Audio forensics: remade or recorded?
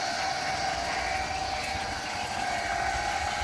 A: recorded